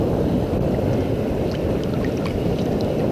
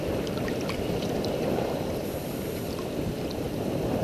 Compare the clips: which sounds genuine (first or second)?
first